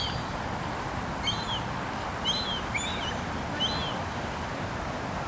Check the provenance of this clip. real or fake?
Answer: real